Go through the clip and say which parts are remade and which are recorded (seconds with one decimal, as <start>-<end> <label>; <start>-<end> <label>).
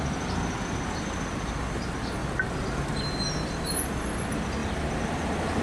0.0-5.6 recorded